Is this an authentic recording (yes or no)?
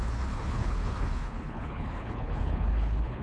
no